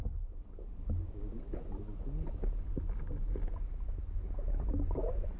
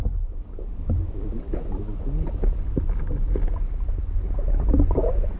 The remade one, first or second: second